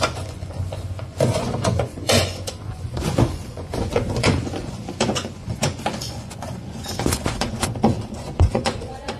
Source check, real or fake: fake